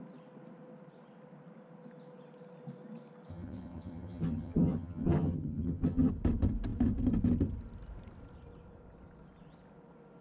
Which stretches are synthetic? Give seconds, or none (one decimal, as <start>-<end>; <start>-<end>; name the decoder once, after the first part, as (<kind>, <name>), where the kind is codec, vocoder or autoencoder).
3.3-6.1 (vocoder, HiFi-GAN)